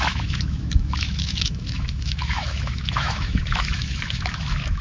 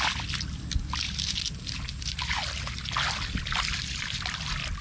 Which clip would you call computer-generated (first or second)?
first